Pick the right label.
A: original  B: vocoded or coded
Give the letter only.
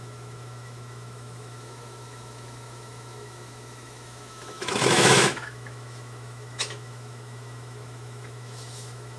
B